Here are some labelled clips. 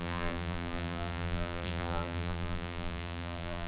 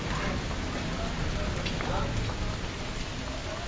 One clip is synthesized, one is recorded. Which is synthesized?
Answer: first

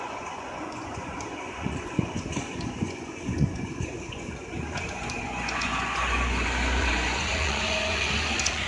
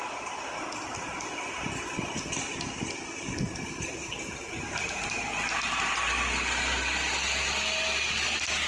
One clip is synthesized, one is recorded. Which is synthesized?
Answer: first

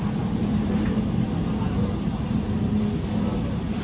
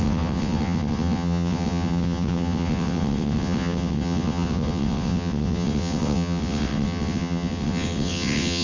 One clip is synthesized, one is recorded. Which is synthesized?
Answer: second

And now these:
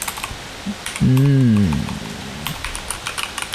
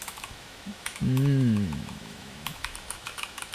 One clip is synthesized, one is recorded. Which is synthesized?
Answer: second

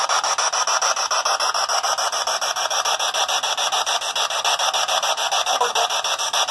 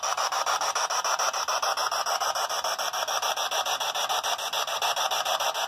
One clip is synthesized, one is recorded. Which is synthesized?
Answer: second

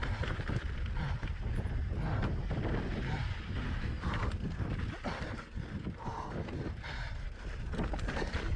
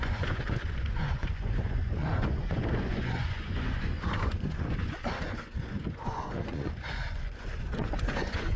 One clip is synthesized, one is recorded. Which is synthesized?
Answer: second